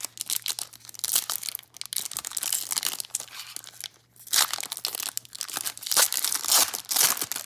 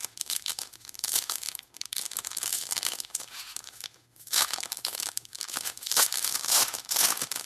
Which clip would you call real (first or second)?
first